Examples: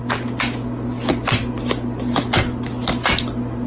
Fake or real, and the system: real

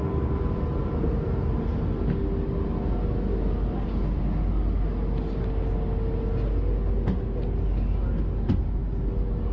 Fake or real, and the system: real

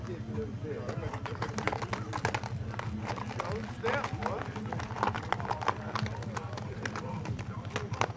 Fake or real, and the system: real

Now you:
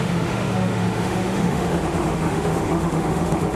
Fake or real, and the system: fake, autoencoder, DAC-VAE